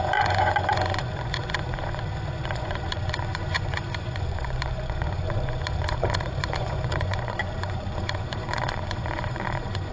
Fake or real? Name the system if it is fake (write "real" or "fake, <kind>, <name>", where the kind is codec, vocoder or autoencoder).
fake, vocoder, Vocos